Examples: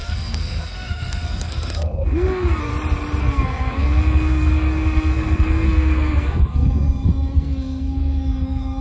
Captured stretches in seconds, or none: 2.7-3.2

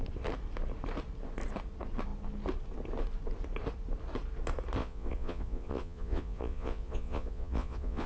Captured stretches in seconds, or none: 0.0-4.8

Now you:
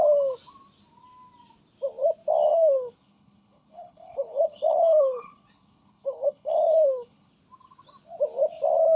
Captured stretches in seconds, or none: 0.0-2.5; 7.3-9.0

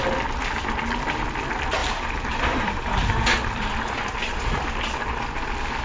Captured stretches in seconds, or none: 0.0-1.8; 3.7-5.8

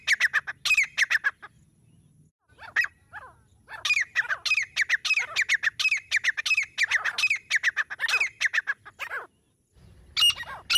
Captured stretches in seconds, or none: 0.0-10.8

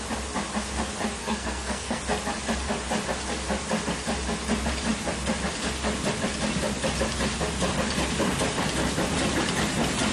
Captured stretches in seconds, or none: 0.0-1.2; 2.0-10.1

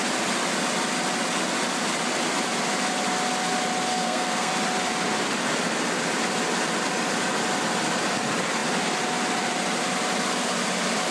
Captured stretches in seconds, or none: 0.0-3.9; 4.5-11.1

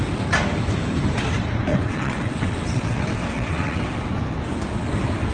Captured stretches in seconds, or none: 0.0-1.7; 3.8-5.3